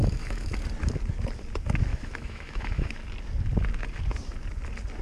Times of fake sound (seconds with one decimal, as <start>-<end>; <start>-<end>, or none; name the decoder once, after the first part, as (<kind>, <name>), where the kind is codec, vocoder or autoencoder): 0.0-0.5 (autoencoder, DAC-VAE); 1.9-2.9